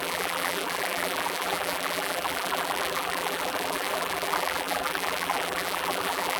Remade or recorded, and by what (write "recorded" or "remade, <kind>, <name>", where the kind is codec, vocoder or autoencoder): remade, vocoder, BigVGAN v2